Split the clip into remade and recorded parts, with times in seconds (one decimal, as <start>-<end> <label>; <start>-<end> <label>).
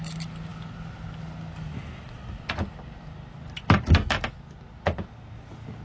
0.0-5.8 recorded